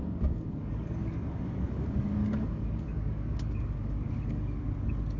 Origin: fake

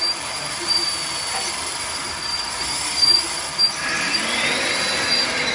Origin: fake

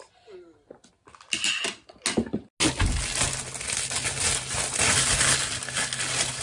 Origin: real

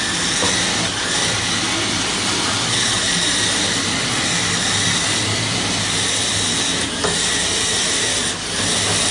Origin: real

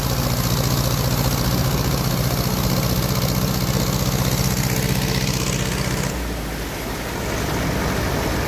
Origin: real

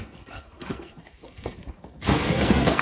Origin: fake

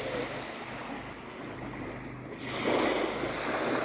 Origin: real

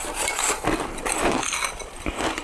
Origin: real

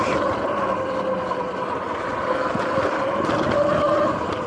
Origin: real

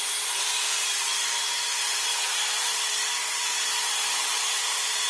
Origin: real